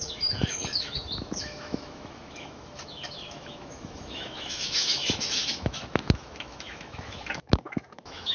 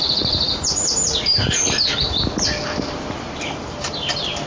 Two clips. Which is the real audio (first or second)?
second